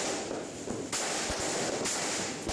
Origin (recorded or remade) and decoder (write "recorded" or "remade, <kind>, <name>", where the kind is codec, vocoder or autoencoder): recorded